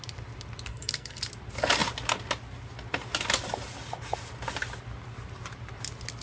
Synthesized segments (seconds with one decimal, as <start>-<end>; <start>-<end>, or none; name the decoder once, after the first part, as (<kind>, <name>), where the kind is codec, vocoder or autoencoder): 0.7-1.2 (codec, SNAC)